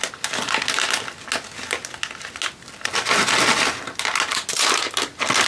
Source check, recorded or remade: recorded